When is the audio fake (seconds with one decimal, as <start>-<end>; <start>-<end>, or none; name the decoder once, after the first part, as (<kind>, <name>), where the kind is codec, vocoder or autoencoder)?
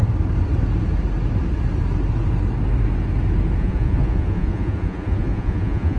3.6-6.0 (vocoder, Vocos)